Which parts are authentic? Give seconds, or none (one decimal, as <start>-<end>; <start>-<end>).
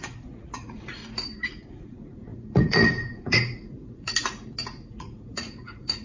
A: 1.0-1.5; 4.1-4.9